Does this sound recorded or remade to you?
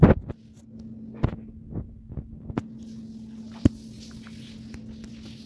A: recorded